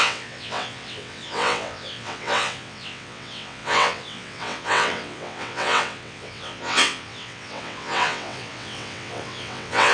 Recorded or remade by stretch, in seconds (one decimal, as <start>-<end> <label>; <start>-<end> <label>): 0.0-9.9 remade